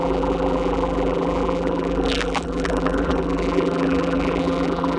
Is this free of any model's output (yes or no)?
no